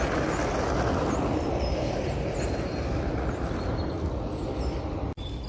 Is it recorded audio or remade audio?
recorded